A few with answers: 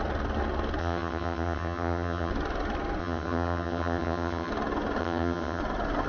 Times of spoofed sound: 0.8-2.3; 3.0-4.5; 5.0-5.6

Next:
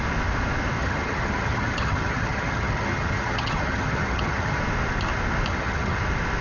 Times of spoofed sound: 0.8-4.6; 5.5-6.0

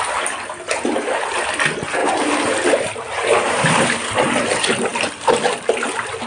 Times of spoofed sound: 2.0-4.0

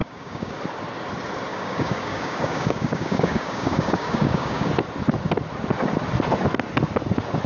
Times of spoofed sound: 0.0-0.6; 1.5-4.7

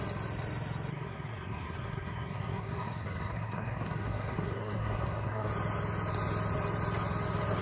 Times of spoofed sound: 0.9-5.5

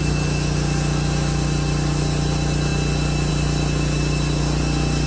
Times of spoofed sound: none

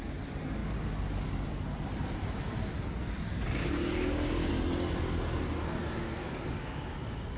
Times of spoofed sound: 3.3-4.5; 6.2-6.9